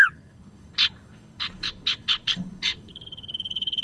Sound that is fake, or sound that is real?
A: fake